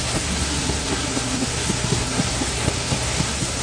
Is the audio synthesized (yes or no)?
yes